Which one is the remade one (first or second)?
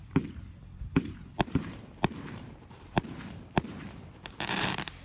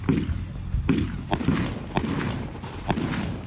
first